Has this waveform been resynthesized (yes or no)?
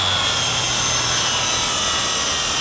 no